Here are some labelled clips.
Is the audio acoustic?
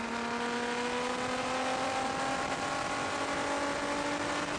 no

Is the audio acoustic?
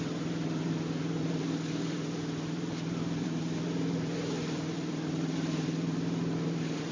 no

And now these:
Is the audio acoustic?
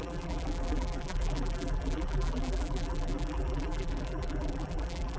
no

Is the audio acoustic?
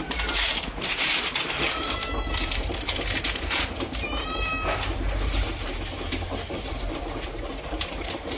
no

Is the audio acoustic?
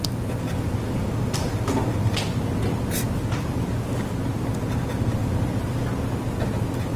yes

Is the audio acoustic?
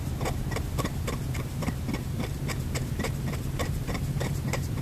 no